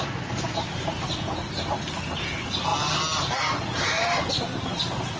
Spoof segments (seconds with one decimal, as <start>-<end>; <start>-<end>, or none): none